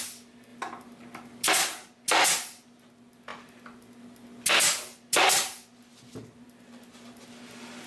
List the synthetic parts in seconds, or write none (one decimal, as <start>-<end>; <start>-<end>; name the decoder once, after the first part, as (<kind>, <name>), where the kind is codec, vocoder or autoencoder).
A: none